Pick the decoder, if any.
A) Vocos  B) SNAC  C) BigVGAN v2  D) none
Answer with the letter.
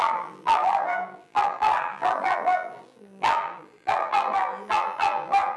C